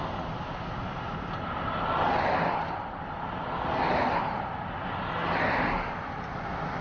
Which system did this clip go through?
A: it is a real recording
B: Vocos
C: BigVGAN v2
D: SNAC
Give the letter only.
A